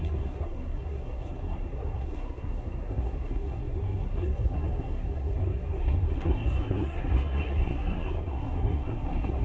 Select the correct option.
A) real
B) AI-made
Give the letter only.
B